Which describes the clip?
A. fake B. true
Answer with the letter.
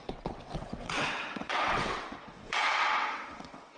A